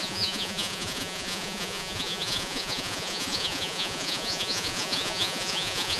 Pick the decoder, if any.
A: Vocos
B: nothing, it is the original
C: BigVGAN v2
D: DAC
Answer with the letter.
A